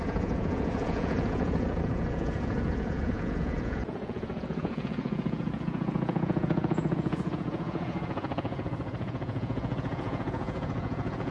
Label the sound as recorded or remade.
remade